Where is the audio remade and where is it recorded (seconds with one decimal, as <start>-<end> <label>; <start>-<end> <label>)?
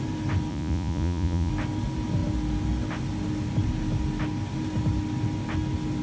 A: 0.0-0.5 recorded; 0.5-1.5 remade; 1.5-6.0 recorded